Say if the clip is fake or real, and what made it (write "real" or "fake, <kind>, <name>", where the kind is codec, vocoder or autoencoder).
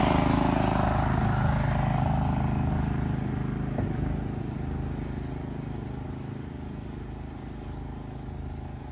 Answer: real